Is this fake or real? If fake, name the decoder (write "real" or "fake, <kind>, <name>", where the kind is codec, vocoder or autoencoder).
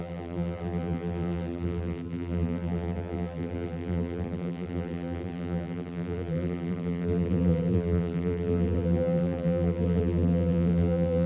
fake, vocoder, BigVGAN v2